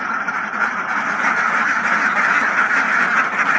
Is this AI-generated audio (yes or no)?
no